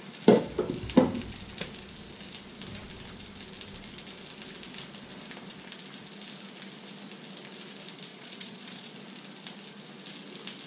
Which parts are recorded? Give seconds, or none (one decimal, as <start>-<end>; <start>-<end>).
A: 0.0-8.1; 8.9-10.7